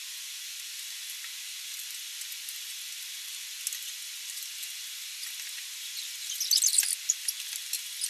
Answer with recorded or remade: recorded